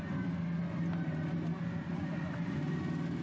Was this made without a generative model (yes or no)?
yes